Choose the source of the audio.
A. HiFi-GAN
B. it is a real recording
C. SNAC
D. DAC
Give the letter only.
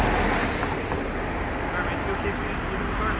B